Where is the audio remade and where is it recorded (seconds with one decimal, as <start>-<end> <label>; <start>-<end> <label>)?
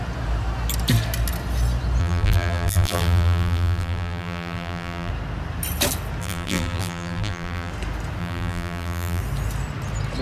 0.0-2.0 recorded; 2.0-5.1 remade; 5.1-6.2 recorded; 6.2-7.7 remade; 7.7-8.2 recorded; 8.2-9.2 remade; 9.2-10.2 recorded